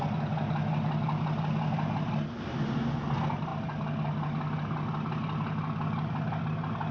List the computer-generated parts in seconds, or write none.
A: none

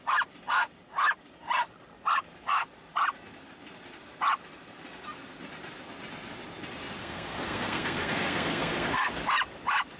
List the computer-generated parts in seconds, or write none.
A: 7.0-9.1 (codec, SNAC)

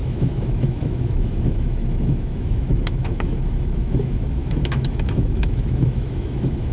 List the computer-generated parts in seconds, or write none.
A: 0.0-6.7 (autoencoder, DAC-VAE)

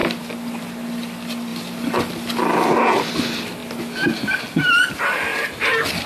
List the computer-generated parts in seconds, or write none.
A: 0.0-0.6 (vocoder, BigVGAN v2)

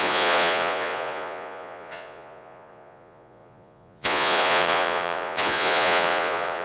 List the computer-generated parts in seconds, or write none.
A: 0.0-6.6 (vocoder, Vocos)

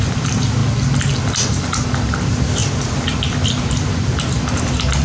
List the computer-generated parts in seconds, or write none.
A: none

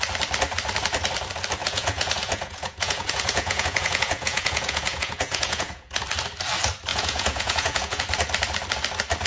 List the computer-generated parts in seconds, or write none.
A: 1.6-6.0 (vocoder, Vocos); 6.9-8.0